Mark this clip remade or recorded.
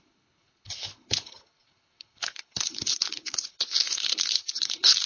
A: remade